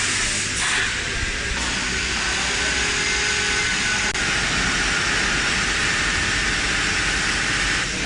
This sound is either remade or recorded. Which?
recorded